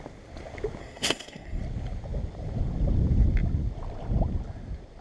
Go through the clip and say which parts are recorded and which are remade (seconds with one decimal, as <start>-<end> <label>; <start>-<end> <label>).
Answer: 0.0-0.8 recorded; 0.8-1.6 remade; 1.6-5.0 recorded